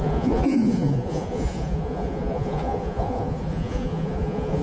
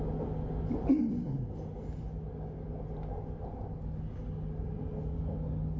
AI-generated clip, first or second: first